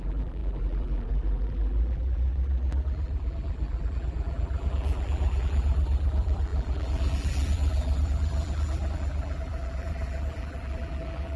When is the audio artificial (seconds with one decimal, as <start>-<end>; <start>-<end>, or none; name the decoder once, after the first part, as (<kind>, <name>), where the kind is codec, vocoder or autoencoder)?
0.0-11.4 (vocoder, BigVGAN v2)